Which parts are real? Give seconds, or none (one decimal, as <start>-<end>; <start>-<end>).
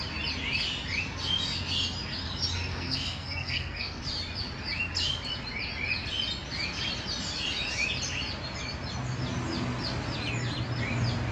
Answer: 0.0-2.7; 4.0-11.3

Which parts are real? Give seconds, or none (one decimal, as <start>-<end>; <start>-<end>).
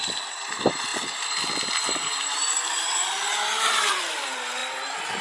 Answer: 0.0-5.2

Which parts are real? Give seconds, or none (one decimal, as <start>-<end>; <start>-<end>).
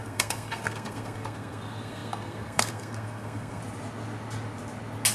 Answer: 3.6-5.1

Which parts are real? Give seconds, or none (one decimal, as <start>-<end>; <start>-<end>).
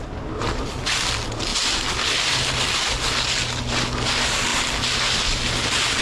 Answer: 0.0-6.0